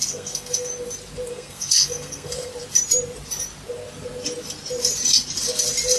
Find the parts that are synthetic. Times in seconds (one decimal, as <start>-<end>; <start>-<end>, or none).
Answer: 0.0-0.7; 1.3-2.5